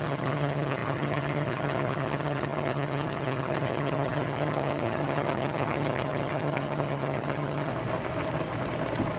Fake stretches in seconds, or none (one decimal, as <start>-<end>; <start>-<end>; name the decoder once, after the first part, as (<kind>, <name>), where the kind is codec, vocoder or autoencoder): 0.0-7.7 (vocoder, HiFi-GAN)